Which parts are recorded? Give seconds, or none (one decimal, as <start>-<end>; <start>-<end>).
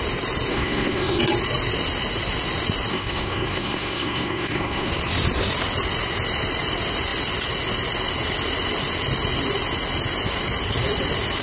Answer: 0.0-0.5; 1.2-2.9; 4.9-11.4